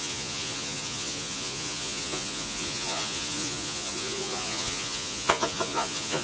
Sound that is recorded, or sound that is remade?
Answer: remade